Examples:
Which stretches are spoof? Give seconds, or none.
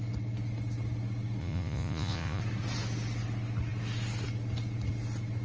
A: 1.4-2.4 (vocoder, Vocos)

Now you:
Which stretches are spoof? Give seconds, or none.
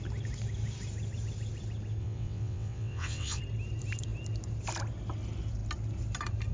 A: 2.0-3.4 (vocoder, WaveNeXt)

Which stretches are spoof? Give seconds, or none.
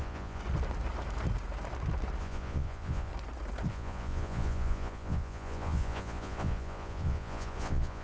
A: 0.0-0.4 (vocoder, Vocos); 2.2-3.1; 3.7-8.0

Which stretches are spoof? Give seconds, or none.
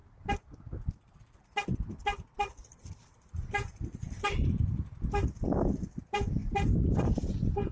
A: 0.0-1.4 (vocoder, BigVGAN v2); 2.5-3.4; 6.4-7.0